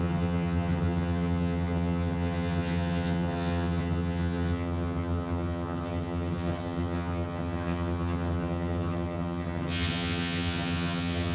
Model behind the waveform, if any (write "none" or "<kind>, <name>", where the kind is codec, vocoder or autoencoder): vocoder, HiFi-GAN